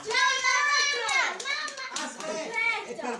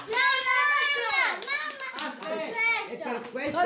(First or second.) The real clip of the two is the second